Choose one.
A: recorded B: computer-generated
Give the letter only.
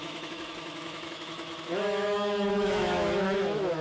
B